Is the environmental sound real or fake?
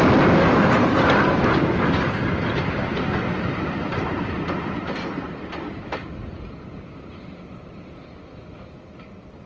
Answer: real